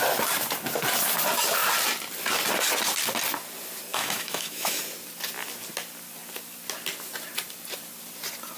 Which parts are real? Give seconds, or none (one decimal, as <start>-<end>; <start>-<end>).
0.0-3.9; 4.8-8.6